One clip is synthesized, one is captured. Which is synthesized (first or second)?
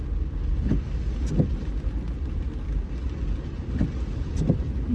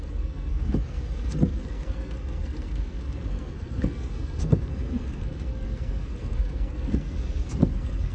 second